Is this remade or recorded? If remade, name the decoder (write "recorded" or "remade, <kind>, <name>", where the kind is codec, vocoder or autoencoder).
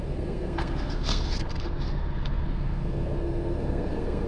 remade, codec, SNAC